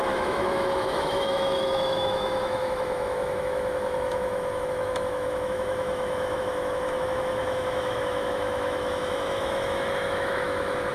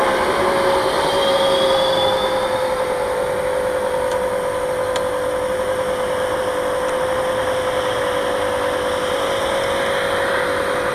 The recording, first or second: second